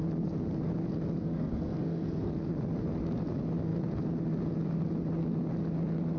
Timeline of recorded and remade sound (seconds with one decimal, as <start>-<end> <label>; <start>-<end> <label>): 0.0-1.2 recorded; 1.2-2.3 remade; 2.3-6.2 recorded